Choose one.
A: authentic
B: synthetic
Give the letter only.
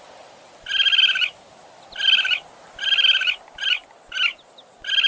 A